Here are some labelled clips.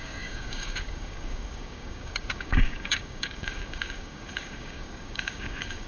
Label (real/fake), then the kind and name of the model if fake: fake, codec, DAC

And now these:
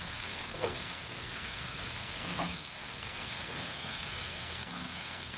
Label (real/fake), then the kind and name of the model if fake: fake, codec, SNAC